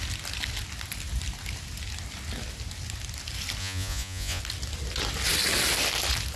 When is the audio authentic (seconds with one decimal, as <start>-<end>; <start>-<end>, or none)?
0.0-3.6; 4.4-6.4